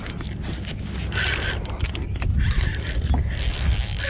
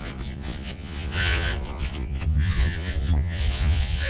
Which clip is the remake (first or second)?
second